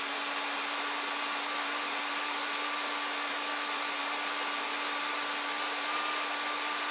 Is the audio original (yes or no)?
yes